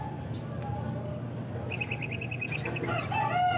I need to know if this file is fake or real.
real